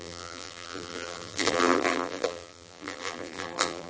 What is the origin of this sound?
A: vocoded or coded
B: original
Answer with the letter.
A